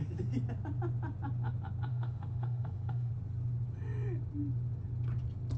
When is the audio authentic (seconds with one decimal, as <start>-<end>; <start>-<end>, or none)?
0.0-1.9; 3.1-5.6